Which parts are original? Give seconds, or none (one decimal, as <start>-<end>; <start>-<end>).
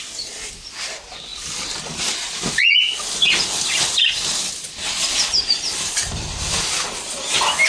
0.0-7.7